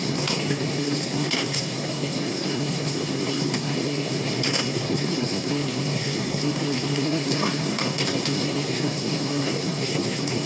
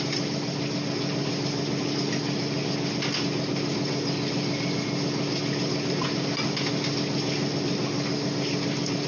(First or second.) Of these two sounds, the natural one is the second